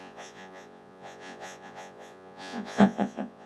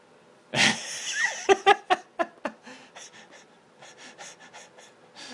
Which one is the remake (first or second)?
first